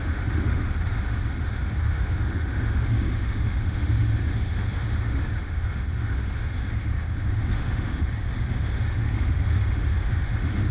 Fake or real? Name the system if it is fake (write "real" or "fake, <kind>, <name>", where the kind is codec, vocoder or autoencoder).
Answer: fake, autoencoder, DAC-VAE